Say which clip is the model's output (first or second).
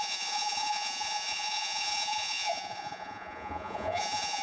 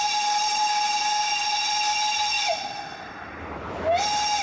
first